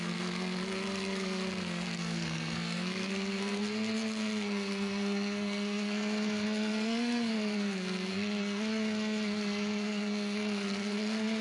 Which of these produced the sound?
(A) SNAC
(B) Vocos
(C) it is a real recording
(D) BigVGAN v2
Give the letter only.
A